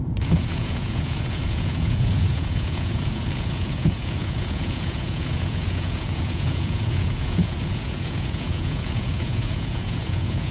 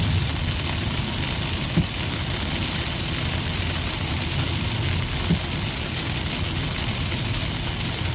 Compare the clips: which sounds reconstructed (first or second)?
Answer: first